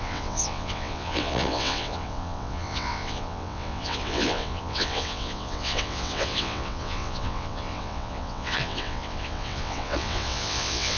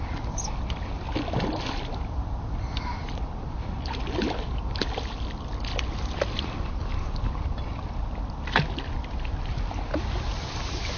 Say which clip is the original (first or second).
second